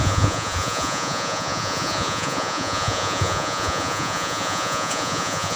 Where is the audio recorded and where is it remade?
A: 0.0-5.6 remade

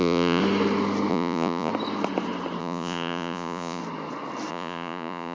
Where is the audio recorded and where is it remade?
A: 0.0-0.4 remade; 0.4-1.1 recorded; 1.1-1.7 remade; 1.7-2.6 recorded; 2.6-3.8 remade; 3.8-4.5 recorded; 4.5-5.3 remade

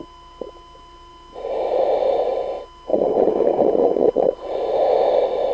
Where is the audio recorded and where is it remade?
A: 0.0-2.9 recorded; 2.9-4.6 remade; 4.6-5.5 recorded

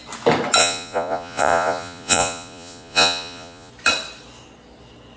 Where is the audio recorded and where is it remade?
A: 0.0-0.6 recorded; 0.6-3.7 remade; 3.7-5.2 recorded